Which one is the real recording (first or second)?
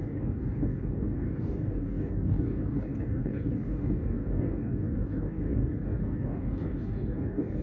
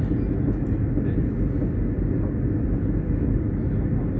second